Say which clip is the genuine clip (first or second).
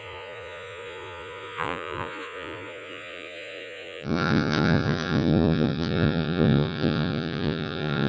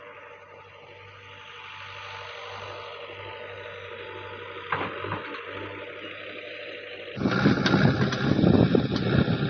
second